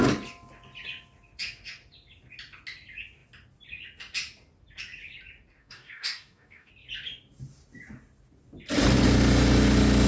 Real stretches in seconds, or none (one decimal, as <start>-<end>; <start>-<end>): 0.0-5.6; 6.7-10.1

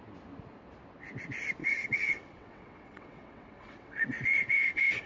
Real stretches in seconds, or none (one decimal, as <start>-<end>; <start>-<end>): 0.0-1.6

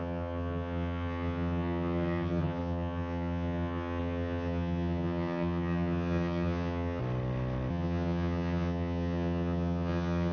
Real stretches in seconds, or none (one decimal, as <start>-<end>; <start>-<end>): 7.0-7.7